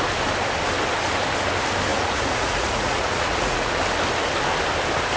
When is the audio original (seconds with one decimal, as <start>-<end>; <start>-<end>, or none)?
0.0-1.9; 3.7-5.2